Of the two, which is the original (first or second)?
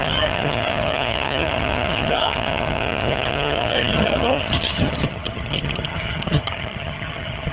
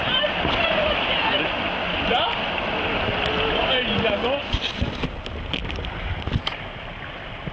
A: second